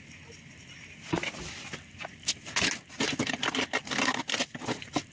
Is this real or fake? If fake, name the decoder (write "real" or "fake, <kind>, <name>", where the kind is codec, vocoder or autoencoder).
real